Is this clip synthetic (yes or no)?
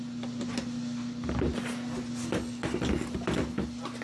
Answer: no